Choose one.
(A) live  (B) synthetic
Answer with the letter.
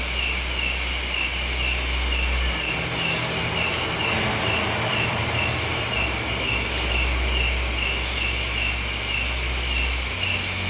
A